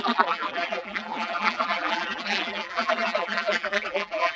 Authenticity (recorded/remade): remade